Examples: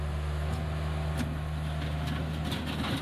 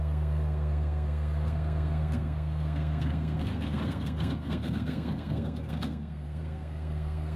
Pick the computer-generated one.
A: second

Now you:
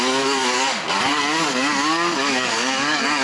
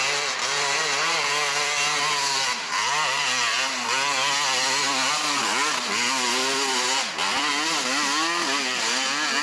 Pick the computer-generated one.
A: first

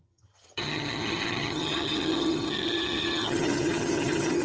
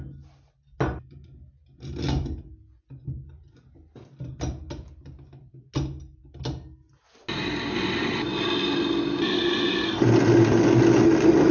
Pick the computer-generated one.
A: first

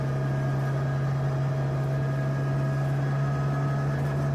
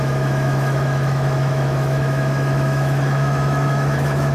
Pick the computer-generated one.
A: second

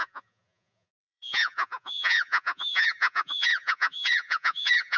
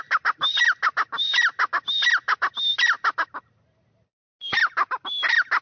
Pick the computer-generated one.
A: first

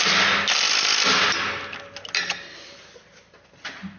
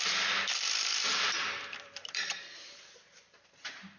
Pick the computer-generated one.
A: second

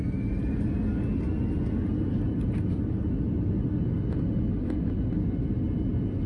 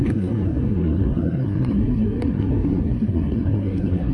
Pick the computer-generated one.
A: second